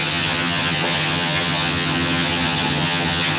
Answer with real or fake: fake